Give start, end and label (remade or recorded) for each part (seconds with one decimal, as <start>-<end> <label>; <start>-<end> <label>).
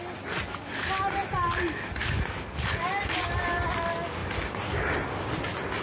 0.0-5.8 recorded